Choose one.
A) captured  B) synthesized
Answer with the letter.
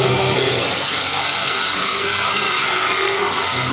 B